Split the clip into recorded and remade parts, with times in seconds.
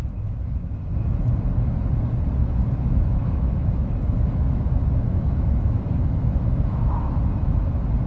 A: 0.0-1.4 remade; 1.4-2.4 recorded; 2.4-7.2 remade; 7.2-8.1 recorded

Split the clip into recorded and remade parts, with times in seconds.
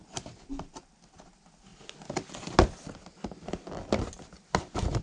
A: 0.0-5.0 recorded